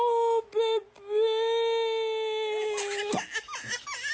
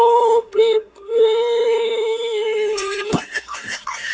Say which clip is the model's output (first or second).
second